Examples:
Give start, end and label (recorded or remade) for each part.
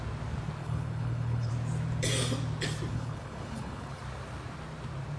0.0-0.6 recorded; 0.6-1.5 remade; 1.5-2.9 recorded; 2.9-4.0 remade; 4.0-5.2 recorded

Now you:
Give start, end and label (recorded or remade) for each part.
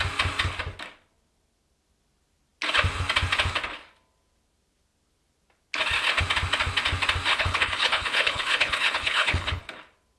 0.0-7.3 recorded; 7.3-9.6 remade; 9.6-10.2 recorded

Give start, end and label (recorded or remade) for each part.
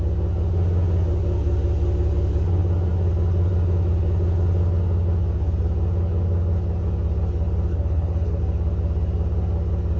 0.0-7.7 recorded; 7.7-8.4 remade; 8.4-10.0 recorded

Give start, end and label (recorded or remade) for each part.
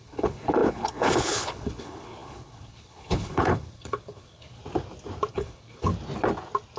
0.0-4.6 remade; 4.6-5.3 recorded; 5.3-5.9 remade; 5.9-6.8 recorded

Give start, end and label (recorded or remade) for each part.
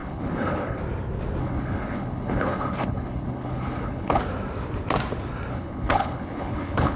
0.0-0.8 remade; 0.8-1.4 recorded; 1.4-4.2 remade; 4.2-5.5 recorded; 5.5-7.0 remade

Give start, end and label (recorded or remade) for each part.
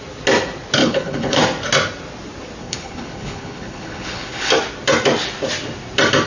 0.0-0.8 recorded; 0.8-1.4 remade; 1.4-2.6 recorded; 2.6-4.5 remade; 4.5-6.3 recorded